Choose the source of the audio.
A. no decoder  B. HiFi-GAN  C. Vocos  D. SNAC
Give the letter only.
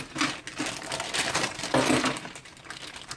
A